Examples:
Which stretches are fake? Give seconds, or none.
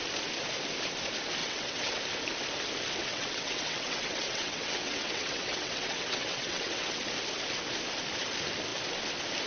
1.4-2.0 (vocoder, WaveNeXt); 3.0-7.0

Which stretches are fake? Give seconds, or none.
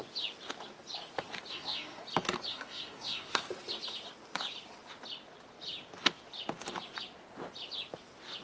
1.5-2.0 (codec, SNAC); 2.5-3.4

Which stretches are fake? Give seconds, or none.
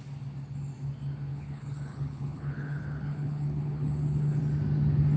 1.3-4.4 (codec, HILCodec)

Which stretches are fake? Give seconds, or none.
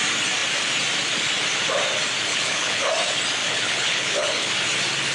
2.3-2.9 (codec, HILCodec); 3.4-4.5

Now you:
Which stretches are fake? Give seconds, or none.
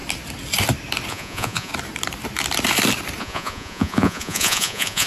1.1-1.7 (vocoder, Vocos); 3.2-5.1